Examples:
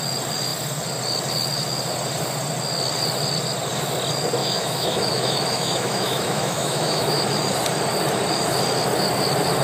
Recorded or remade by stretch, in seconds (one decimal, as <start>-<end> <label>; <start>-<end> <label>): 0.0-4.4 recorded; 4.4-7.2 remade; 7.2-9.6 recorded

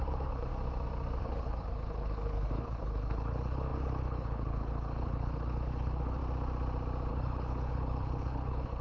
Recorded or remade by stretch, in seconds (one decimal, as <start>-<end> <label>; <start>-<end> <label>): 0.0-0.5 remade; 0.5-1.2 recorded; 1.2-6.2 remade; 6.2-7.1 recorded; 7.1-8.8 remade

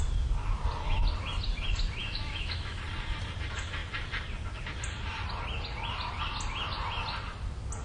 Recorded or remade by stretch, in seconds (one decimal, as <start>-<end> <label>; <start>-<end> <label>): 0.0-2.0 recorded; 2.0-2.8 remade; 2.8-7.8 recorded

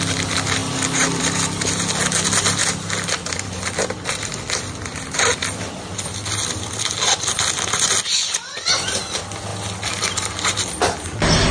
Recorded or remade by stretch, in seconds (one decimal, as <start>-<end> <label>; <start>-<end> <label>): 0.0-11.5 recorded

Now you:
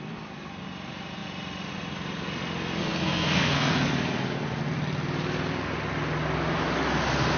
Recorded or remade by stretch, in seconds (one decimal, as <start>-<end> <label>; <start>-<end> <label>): 0.0-2.8 recorded; 2.8-3.9 remade; 3.9-7.4 recorded